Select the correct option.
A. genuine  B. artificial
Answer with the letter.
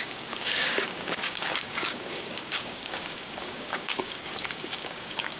B